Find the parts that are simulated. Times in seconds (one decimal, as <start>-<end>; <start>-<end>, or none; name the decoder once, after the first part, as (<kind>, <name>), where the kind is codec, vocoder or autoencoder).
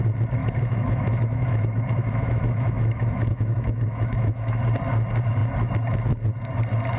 0.4-4.6 (autoencoder, DAC-VAE)